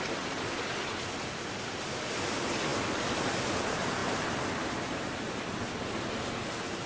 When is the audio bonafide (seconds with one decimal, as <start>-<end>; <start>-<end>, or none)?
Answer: 0.0-6.9